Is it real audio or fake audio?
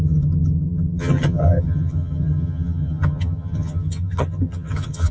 fake